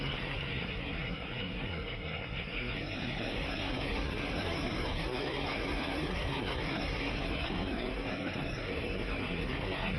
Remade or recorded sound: remade